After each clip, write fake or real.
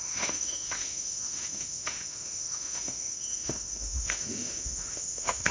fake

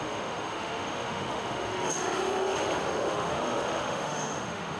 fake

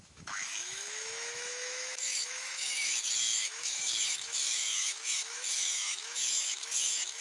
fake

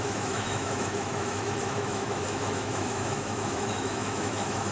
fake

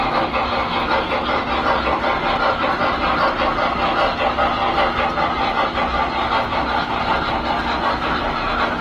real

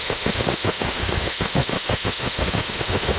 fake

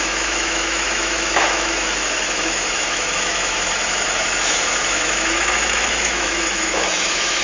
fake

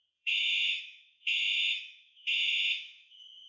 fake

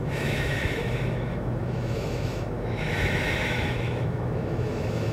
fake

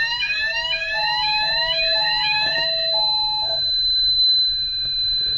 fake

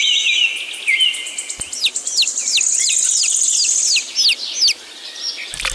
real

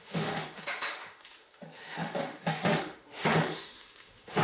fake